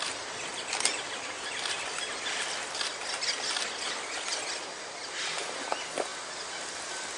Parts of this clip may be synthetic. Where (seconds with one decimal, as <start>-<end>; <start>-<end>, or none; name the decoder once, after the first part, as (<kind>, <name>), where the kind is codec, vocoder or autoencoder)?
none